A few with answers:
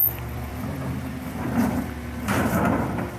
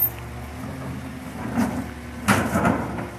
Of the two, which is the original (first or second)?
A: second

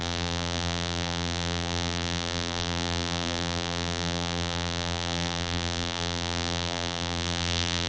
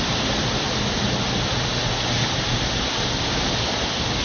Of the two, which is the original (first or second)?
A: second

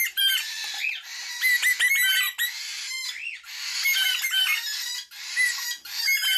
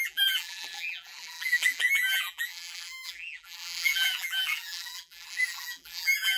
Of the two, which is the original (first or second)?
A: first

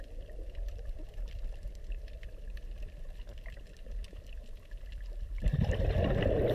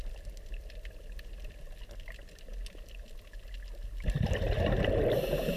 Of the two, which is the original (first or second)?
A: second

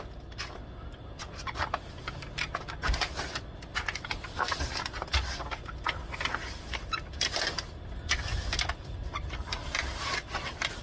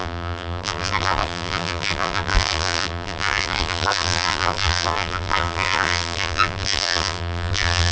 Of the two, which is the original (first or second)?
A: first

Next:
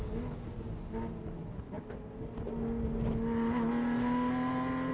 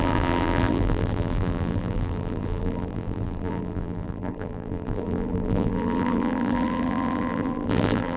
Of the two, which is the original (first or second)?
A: first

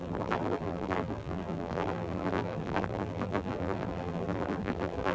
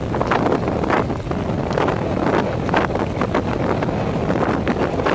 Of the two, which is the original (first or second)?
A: second